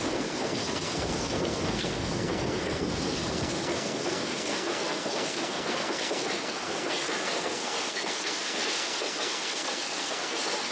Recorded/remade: remade